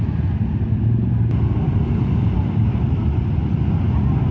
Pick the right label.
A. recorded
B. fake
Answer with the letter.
A